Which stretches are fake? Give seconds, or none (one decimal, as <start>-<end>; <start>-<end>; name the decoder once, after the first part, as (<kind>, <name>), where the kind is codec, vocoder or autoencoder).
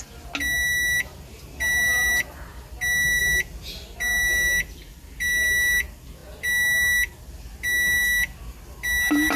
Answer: none